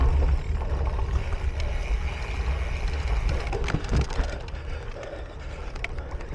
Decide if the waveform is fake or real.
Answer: real